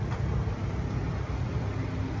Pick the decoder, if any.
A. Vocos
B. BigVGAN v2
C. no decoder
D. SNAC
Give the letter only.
C